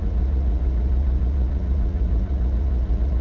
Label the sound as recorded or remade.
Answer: remade